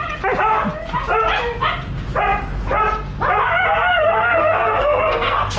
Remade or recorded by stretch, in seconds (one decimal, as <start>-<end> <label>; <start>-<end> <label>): 0.0-3.9 recorded; 3.9-5.6 remade